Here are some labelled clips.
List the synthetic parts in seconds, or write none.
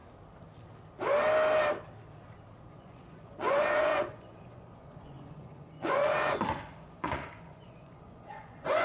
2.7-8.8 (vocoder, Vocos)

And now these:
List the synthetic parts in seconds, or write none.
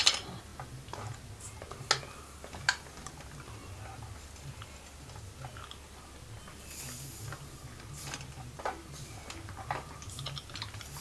none